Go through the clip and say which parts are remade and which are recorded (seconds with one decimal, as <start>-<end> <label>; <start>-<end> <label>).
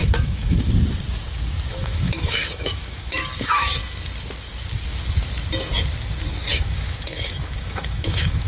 0.0-0.7 remade; 0.7-1.7 recorded; 1.7-3.7 remade; 3.7-6.5 recorded; 6.5-8.5 remade